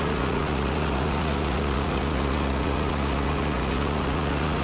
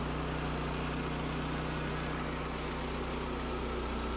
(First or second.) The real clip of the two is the second